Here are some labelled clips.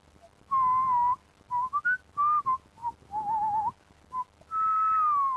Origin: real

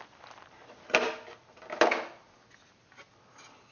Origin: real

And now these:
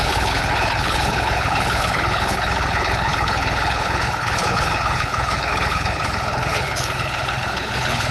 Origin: fake